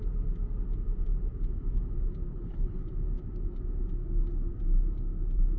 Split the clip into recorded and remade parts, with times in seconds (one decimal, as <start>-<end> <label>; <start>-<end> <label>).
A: 0.0-2.3 recorded; 2.3-2.9 remade; 2.9-5.6 recorded